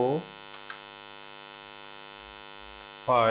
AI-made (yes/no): no